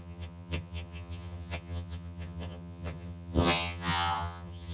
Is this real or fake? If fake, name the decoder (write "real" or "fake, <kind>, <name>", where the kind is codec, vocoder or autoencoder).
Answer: fake, vocoder, HiFi-GAN